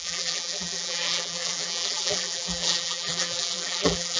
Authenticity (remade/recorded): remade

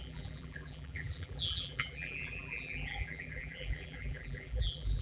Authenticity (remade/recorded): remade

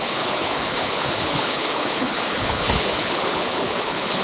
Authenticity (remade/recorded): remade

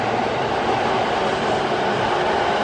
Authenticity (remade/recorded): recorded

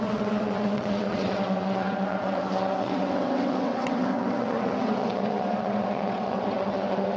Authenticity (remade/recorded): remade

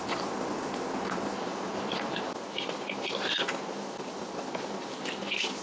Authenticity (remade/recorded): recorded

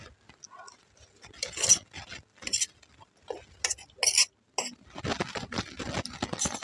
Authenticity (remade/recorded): recorded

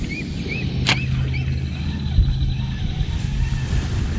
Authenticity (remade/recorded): recorded